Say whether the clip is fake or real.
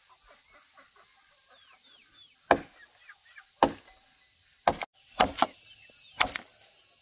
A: real